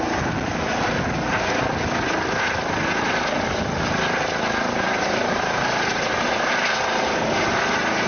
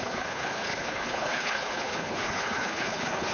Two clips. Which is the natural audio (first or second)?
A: first